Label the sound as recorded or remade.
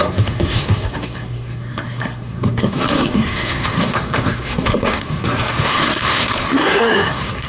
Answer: remade